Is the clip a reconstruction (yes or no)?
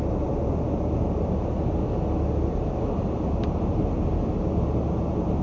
no